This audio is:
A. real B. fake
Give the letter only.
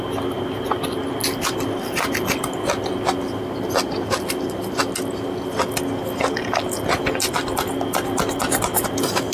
A